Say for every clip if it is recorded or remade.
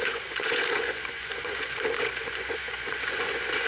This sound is remade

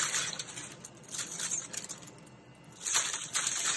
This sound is recorded